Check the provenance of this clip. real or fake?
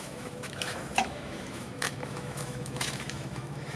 fake